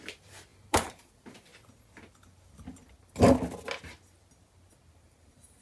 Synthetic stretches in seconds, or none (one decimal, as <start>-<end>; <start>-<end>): 0.0-1.5; 4.9-5.6